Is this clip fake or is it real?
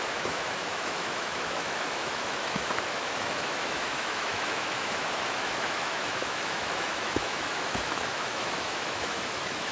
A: fake